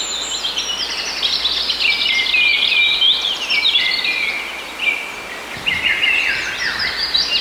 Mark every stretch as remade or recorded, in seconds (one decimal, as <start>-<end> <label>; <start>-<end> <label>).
0.0-7.4 recorded